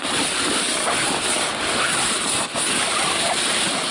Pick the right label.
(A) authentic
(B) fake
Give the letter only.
A